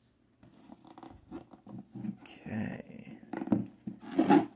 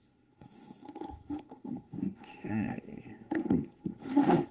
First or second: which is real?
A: first